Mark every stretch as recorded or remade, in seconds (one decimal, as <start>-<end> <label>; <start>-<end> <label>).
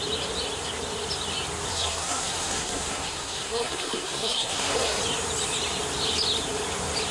0.0-1.7 recorded; 1.7-5.0 remade; 5.0-7.1 recorded